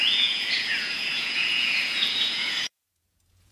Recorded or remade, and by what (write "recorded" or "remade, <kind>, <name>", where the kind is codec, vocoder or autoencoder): remade, vocoder, Vocos